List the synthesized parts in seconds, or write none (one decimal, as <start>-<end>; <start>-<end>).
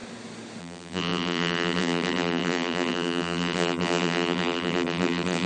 0.6-5.5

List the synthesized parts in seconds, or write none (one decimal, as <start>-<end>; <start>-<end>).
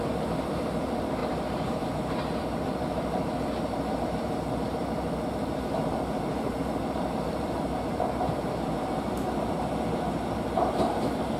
0.0-11.4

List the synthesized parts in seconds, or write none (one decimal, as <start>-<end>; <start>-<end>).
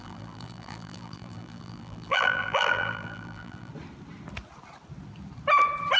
0.0-3.7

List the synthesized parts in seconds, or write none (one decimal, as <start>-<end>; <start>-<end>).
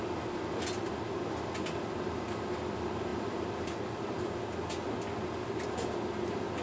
none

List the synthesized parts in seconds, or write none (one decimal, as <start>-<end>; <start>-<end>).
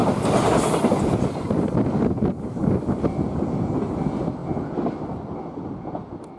none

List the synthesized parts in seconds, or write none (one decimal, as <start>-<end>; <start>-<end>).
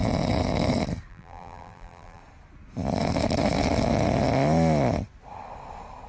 1.1-2.2